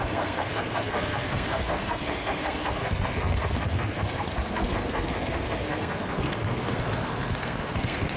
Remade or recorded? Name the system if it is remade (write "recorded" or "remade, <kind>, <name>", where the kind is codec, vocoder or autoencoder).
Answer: remade, codec, SNAC